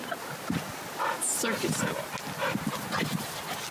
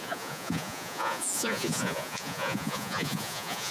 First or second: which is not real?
second